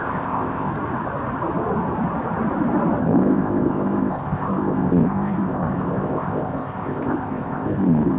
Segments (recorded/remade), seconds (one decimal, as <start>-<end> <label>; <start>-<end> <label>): 0.0-0.7 remade; 0.7-3.0 recorded; 3.0-8.2 remade